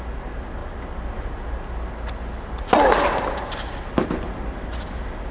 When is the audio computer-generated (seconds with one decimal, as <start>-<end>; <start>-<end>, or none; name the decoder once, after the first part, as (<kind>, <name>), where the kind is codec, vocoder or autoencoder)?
none